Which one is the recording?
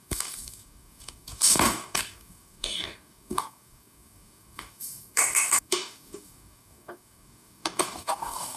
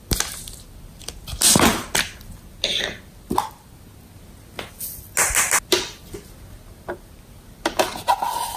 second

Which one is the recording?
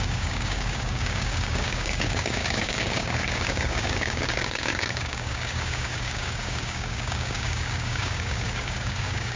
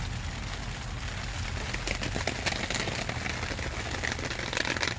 second